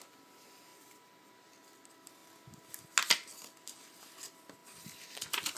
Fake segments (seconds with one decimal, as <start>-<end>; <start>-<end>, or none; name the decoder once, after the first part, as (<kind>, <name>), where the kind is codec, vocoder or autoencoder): 0.7-1.3 (vocoder, BigVGAN v2); 4.6-5.6